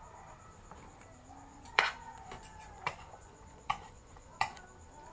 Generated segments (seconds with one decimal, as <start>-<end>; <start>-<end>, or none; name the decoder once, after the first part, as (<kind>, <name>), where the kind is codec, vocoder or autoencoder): 1.5-4.6 (vocoder, Vocos)